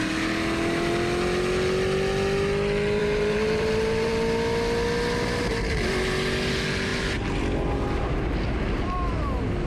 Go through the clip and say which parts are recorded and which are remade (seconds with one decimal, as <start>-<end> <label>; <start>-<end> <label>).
0.0-3.0 recorded; 3.0-4.1 remade; 4.1-9.7 recorded